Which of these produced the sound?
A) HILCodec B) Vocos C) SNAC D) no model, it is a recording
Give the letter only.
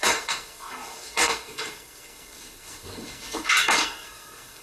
C